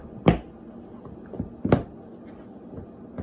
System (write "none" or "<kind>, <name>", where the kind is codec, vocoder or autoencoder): none